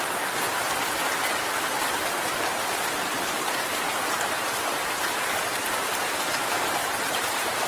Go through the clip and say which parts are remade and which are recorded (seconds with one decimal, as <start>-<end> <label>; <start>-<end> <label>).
0.0-3.0 recorded; 3.0-7.7 remade